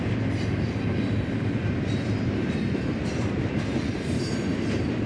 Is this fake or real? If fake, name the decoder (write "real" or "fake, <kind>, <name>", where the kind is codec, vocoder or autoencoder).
fake, vocoder, BigVGAN v2